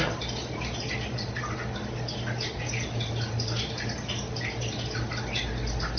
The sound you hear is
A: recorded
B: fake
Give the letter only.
A